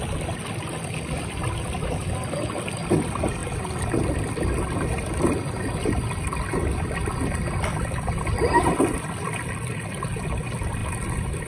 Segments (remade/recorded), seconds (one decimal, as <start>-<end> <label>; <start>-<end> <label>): 0.0-11.5 recorded